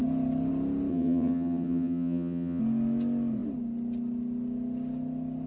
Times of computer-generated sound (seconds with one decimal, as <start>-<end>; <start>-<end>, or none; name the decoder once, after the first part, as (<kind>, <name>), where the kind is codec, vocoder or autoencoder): 0.9-2.6 (vocoder, HiFi-GAN)